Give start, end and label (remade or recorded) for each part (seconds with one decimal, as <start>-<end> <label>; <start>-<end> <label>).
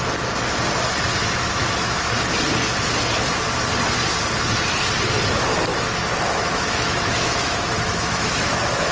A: 0.0-1.2 recorded; 1.2-2.1 remade; 2.1-5.7 recorded; 5.7-8.9 remade